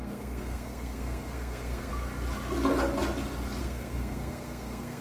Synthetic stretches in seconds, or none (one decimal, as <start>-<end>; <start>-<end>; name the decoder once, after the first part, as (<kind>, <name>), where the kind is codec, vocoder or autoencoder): 0.0-1.9 (codec, SNAC); 3.6-5.0